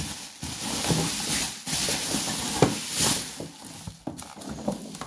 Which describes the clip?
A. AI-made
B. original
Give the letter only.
B